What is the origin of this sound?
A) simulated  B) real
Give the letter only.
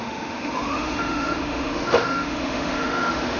A